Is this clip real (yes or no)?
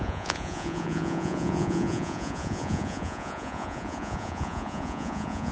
no